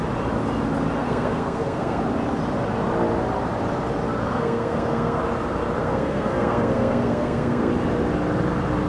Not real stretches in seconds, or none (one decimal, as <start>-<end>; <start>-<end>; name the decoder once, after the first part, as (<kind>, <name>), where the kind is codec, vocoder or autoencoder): 1.0-2.0 (codec, SNAC); 4.3-5.2; 5.8-7.7